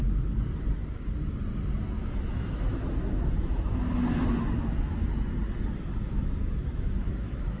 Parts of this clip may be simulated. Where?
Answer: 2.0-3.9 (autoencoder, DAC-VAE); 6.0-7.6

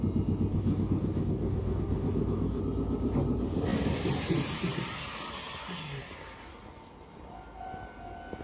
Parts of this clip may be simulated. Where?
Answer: 0.5-2.6 (codec, DAC)

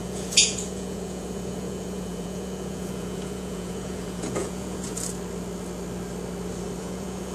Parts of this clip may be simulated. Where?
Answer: 0.0-4.9 (vocoder, Vocos); 6.8-7.3

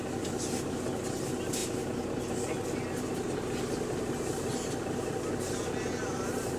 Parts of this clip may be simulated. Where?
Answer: none

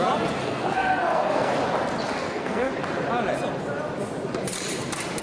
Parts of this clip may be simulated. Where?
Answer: 0.4-1.5 (codec, SNAC); 2.2-2.7